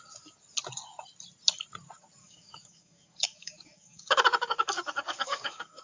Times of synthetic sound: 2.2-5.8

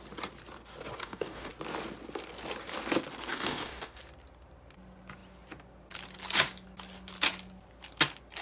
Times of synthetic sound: 1.0-1.5; 3.3-4.0

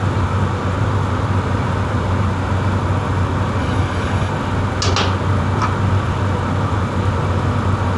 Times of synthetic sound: 3.6-4.3

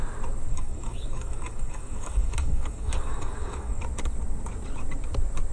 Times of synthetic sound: 0.5-3.8

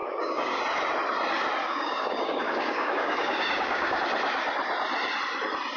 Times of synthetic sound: 0.0-0.6; 1.6-4.0

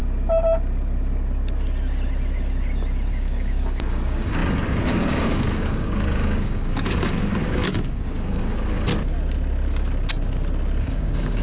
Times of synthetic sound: 3.1-8.9; 10.8-11.4